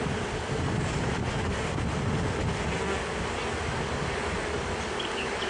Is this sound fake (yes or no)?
no